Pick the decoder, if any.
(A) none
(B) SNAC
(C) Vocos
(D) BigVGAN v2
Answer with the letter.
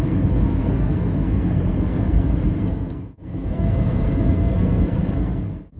B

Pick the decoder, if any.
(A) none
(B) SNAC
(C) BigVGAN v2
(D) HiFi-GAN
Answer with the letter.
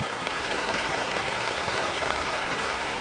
B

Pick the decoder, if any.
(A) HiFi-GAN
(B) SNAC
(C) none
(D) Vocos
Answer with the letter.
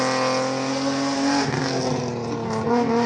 C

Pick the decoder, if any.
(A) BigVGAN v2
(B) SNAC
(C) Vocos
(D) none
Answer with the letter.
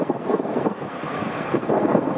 B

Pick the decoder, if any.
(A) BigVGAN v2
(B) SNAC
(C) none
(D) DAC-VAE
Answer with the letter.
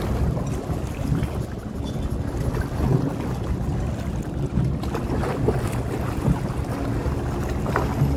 C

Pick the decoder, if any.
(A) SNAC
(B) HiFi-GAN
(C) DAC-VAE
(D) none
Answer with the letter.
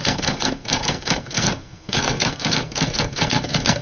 A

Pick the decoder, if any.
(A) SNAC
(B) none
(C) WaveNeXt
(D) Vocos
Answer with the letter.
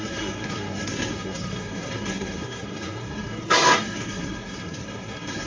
A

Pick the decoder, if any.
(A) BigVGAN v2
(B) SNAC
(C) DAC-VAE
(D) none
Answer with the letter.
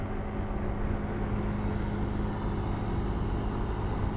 D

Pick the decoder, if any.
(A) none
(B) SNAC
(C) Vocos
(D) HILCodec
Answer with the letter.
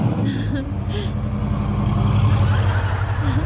A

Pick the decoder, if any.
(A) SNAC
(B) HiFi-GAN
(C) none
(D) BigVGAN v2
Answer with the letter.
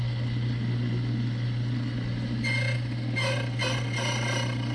C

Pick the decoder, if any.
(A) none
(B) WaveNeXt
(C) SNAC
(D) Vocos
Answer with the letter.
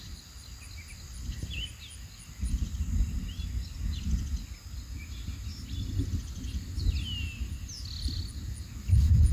A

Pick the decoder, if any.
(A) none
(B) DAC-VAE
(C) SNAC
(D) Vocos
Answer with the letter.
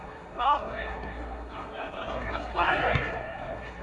C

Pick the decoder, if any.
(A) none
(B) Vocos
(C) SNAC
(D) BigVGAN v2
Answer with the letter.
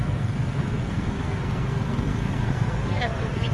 C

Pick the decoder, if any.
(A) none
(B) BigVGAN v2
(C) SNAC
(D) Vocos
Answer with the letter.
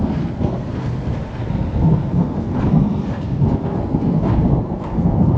C